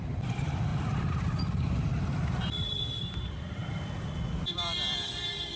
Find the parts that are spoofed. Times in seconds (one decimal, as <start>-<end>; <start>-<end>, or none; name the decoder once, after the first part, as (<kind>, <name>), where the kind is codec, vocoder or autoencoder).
0.0-5.6 (vocoder, BigVGAN v2)